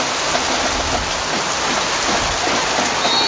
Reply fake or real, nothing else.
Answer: real